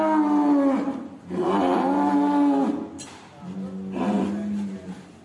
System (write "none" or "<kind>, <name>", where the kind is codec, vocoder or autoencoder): none